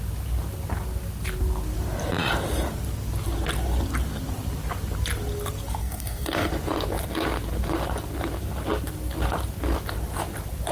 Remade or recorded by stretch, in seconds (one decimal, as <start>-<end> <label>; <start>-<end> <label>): 0.0-5.8 recorded; 5.8-6.5 remade; 6.5-10.7 recorded